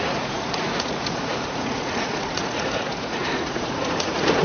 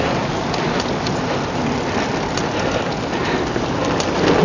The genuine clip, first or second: second